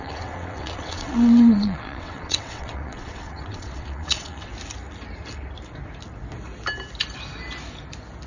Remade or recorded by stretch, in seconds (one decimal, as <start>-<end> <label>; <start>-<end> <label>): 0.0-4.5 remade; 4.5-8.3 recorded